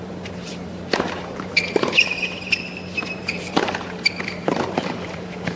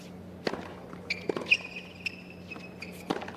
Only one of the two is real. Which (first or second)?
second